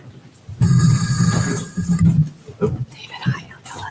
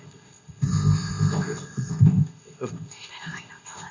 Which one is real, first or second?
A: first